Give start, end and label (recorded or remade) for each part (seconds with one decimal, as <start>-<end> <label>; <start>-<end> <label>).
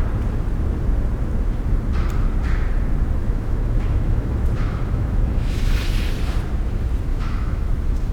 0.0-3.2 recorded; 3.2-5.8 remade; 5.8-7.1 recorded; 7.1-8.1 remade